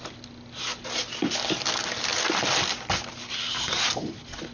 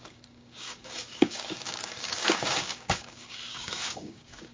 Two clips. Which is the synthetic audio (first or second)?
second